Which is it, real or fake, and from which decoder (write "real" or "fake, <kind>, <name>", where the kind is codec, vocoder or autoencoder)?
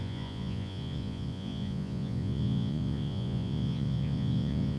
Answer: fake, vocoder, Vocos